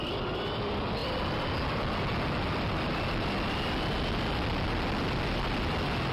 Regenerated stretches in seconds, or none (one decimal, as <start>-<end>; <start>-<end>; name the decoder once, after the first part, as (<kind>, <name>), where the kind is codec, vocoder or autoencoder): none